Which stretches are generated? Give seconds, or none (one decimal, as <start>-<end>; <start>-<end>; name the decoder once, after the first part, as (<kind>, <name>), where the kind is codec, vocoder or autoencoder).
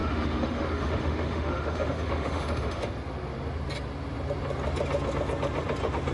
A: 0.0-2.9 (autoencoder, DAC-VAE)